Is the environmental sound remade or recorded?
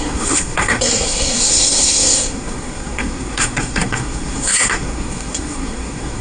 remade